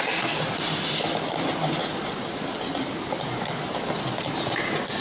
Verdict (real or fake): real